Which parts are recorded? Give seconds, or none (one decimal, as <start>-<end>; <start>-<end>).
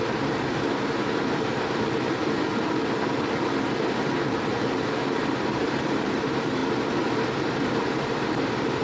2.2-5.4; 6.6-7.5